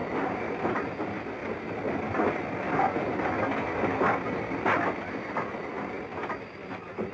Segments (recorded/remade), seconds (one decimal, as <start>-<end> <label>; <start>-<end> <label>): 0.0-0.7 remade; 0.7-1.4 recorded; 1.4-3.1 remade; 3.1-4.8 recorded; 4.8-6.0 remade; 6.0-7.1 recorded